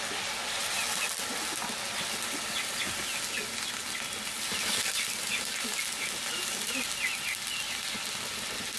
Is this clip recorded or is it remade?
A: recorded